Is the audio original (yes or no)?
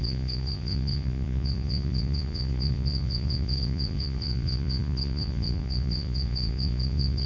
no